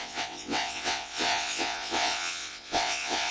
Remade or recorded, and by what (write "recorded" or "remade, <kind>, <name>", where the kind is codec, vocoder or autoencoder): remade, vocoder, WaveNeXt